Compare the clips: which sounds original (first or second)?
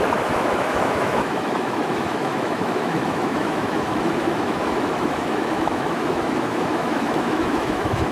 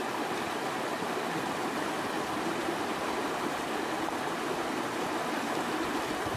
second